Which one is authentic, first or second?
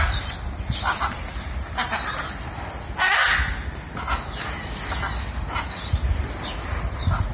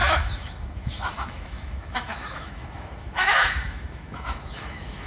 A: first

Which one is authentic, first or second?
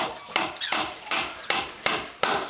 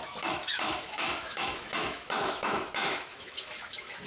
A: first